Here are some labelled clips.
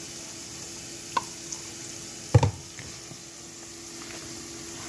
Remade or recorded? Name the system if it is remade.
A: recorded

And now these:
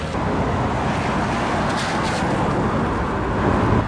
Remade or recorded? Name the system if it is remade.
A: recorded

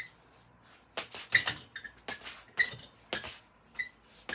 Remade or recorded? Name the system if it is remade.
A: recorded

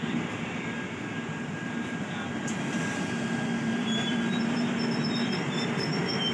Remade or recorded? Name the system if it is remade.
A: remade, vocoder, BigVGAN v2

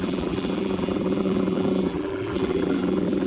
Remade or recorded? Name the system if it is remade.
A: remade, vocoder, BigVGAN v2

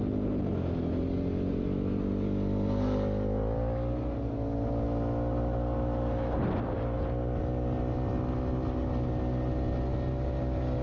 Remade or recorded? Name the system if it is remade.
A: recorded